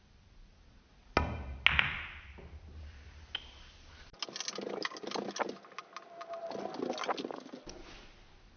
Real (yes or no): yes